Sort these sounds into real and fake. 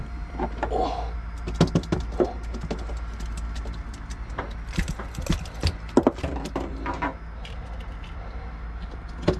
real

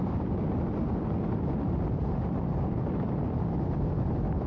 real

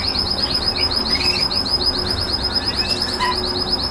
real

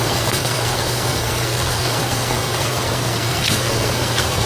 fake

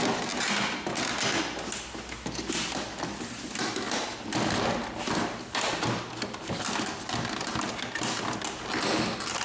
real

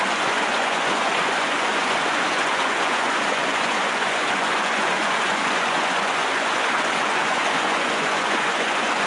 fake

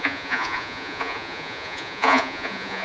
fake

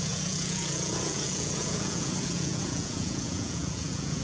fake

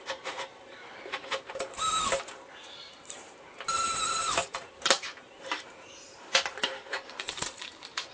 fake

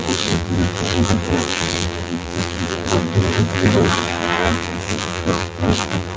fake